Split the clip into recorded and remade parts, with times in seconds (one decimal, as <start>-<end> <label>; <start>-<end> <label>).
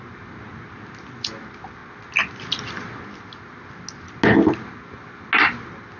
0.0-6.0 recorded